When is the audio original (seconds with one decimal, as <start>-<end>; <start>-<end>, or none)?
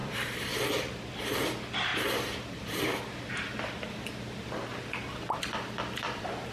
0.5-1.9; 2.8-6.5